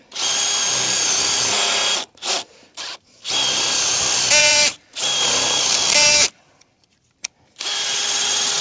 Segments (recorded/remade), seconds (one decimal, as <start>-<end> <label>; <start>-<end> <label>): 0.0-4.4 recorded; 4.4-6.3 remade; 6.3-8.6 recorded